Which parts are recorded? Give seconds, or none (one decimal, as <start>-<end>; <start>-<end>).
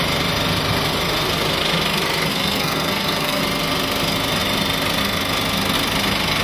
0.0-2.3; 3.4-6.4